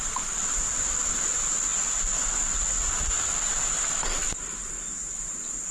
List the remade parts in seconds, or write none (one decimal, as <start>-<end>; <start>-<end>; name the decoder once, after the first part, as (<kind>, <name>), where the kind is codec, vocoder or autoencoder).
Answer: none